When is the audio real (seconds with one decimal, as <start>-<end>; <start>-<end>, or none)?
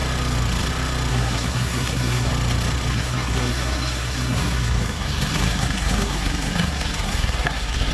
0.0-1.1; 2.3-2.9